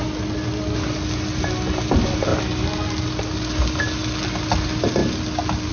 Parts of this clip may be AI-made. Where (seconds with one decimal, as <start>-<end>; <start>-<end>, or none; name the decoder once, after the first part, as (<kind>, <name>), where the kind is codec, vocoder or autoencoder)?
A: none